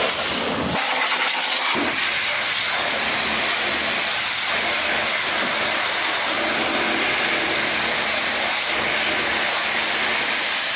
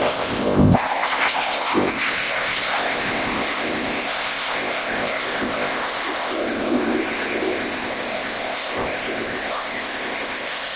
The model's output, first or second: second